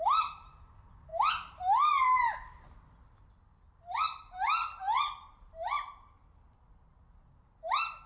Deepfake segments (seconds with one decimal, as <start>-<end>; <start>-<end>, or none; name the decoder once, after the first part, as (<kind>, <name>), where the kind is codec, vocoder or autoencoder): none